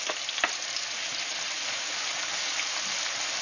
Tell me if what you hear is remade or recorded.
recorded